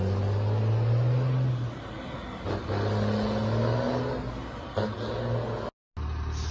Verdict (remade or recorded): recorded